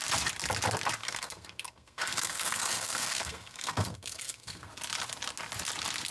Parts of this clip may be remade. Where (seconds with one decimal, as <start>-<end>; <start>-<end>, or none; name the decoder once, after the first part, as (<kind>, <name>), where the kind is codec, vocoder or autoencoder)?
1.0-4.7 (codec, SNAC)